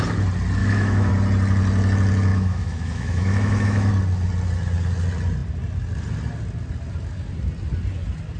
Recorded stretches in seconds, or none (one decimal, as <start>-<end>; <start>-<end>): 0.0-0.6; 1.1-2.3; 3.9-8.4